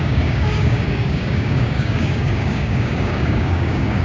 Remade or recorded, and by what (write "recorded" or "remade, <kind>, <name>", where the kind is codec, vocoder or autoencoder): remade, codec, DAC